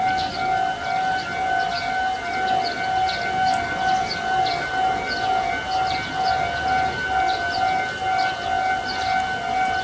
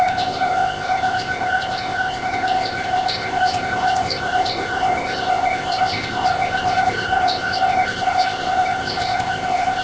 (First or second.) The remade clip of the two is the second